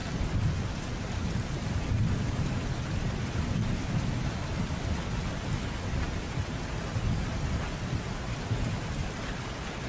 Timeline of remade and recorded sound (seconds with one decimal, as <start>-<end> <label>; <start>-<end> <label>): 0.0-4.6 remade; 4.6-9.9 recorded